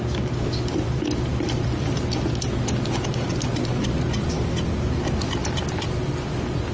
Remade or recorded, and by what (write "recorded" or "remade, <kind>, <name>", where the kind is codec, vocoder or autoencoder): recorded